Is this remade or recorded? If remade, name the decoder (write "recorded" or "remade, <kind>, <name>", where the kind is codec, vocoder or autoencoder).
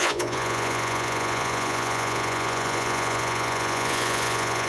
remade, vocoder, Vocos